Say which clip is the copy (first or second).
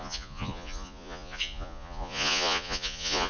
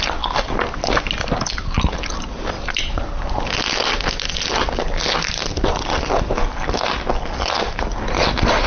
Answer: first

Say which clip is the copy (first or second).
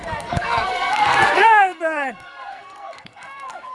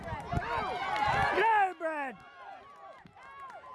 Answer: first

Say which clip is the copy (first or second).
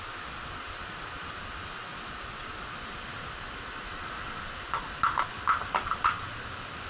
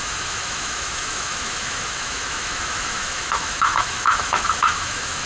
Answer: second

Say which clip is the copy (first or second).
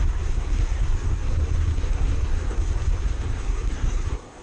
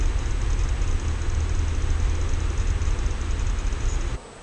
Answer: first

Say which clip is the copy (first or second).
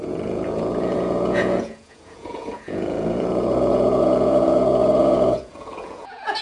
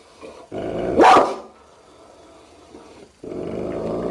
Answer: first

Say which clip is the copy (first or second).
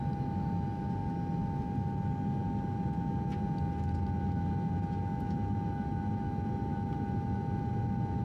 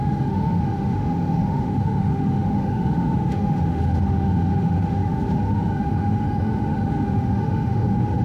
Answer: second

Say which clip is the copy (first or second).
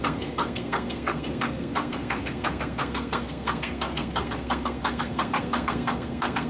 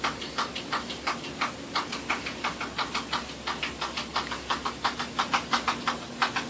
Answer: first